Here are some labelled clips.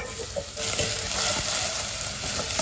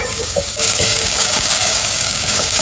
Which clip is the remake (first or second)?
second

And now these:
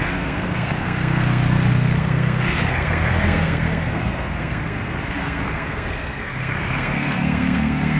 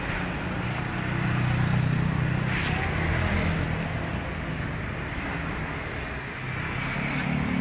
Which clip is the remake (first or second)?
first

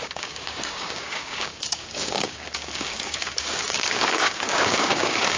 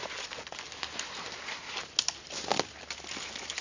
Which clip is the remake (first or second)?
first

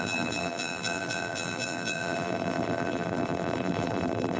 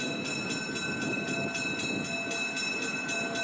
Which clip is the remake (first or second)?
first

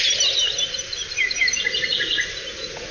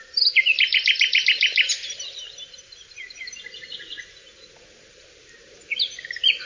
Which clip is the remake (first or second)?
second